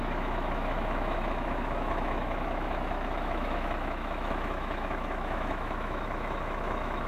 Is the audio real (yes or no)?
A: no